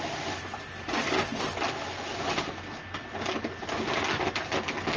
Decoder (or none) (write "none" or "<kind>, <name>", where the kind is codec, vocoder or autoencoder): none